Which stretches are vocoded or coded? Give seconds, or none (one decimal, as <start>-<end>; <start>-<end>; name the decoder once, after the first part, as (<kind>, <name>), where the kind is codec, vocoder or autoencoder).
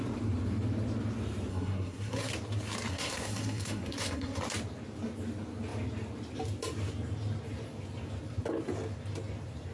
1.5-2.3 (codec, SNAC); 2.9-4.4